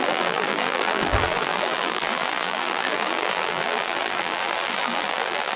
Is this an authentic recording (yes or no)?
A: no